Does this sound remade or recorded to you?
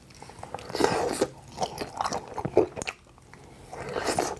recorded